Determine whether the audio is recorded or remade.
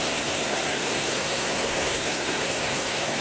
remade